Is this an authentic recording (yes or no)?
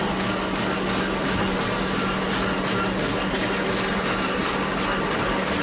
yes